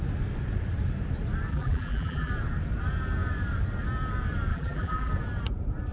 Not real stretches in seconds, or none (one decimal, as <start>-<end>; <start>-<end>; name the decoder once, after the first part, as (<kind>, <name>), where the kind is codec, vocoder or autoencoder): 1.5-2.3 (vocoder, BigVGAN v2); 4.5-5.1